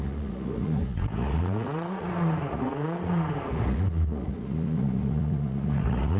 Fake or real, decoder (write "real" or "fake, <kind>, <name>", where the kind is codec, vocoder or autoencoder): fake, vocoder, Vocos